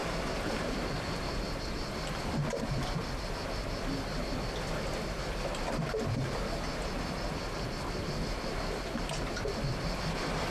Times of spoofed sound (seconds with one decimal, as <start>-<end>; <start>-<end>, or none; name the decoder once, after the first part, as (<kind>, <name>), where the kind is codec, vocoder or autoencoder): none

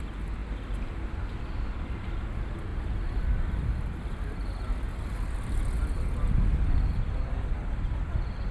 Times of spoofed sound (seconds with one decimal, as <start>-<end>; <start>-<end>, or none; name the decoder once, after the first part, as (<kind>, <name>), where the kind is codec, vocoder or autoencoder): none

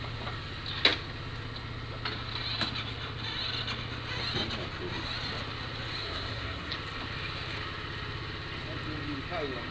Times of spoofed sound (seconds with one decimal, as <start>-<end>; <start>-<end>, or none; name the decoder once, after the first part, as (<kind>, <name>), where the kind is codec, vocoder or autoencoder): 6.0-6.7 (codec, SNAC)

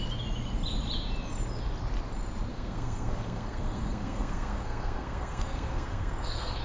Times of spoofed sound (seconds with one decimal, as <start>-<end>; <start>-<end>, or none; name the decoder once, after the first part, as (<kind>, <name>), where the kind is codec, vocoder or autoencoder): 2.5-6.6 (codec, SNAC)